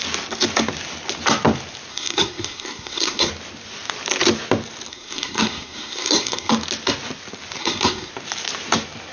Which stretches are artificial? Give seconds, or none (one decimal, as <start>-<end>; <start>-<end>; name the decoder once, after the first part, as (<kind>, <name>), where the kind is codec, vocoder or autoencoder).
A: 1.9-3.3 (codec, SNAC); 4.9-6.5; 7.6-8.1